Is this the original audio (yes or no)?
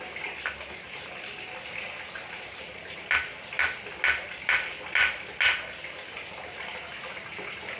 yes